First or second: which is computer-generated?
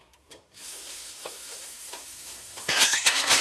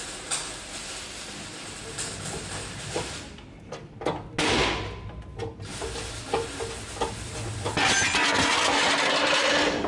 first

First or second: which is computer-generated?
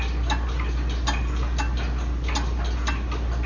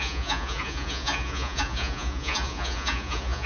second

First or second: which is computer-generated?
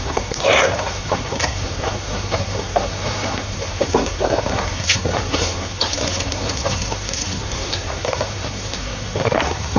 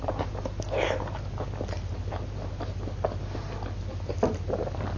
first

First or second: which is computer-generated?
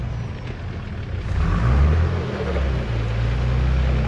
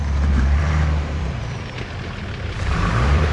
second